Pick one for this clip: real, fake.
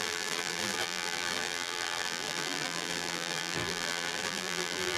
fake